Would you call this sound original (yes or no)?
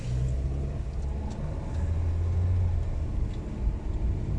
yes